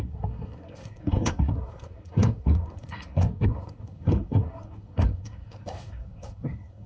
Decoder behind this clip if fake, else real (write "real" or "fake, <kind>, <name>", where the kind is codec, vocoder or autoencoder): fake, codec, SNAC